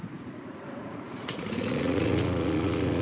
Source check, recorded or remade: remade